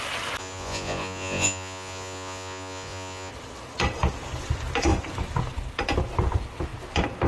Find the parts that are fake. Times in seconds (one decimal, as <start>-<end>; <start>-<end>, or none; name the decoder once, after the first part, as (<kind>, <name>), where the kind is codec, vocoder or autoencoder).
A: 0.4-3.3 (vocoder, Vocos)